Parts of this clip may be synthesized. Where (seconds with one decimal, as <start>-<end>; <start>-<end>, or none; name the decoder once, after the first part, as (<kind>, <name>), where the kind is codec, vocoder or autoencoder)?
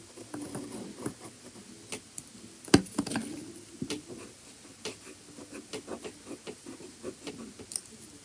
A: none